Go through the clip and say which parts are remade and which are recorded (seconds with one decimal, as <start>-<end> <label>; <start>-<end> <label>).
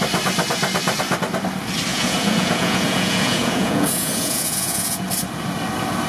0.0-1.9 recorded; 1.9-5.0 remade; 5.0-6.1 recorded